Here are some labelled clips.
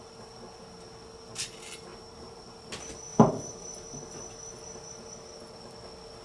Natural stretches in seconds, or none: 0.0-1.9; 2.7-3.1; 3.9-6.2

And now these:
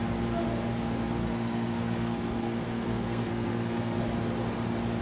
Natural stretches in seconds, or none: 0.0-1.2; 4.0-5.0

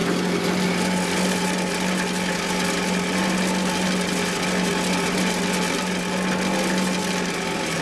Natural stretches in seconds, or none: 0.0-7.8

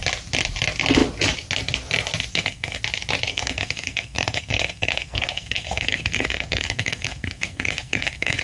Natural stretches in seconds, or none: 0.0-2.3; 2.8-3.3

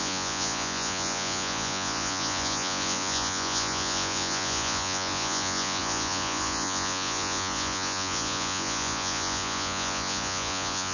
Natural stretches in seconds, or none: none

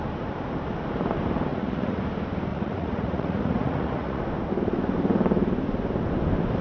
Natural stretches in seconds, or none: 0.0-1.5; 2.0-2.5; 4.2-6.6

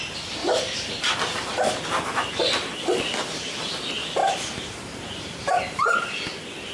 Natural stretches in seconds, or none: 0.0-2.7; 3.7-4.2; 5.9-6.7

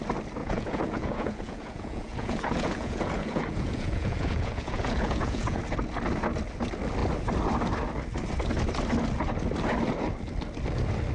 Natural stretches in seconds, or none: 0.0-0.4; 5.6-11.1